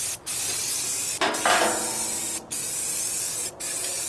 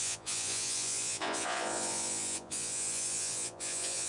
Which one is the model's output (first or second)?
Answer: second